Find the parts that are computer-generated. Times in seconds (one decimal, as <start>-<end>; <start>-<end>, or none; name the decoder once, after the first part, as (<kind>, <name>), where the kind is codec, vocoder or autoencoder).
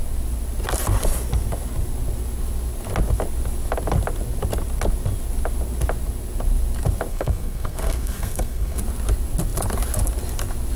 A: 7.1-8.8 (codec, SNAC)